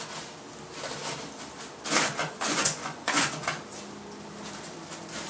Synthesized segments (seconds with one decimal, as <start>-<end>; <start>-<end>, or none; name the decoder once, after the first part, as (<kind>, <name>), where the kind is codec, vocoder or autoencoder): 2.2-3.3 (vocoder, Vocos)